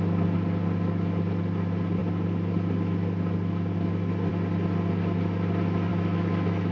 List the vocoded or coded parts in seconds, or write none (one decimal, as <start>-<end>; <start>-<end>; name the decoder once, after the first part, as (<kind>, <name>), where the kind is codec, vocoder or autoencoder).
5.9-6.7 (autoencoder, DAC-VAE)

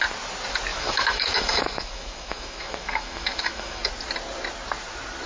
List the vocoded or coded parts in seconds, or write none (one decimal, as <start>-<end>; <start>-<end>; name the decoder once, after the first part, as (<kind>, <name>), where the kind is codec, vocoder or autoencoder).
0.7-3.9 (autoencoder, DAC-VAE)